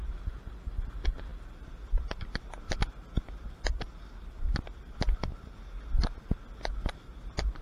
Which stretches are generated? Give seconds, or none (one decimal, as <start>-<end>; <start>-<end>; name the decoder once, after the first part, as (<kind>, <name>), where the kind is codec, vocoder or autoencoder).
none